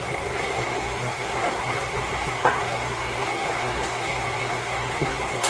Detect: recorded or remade remade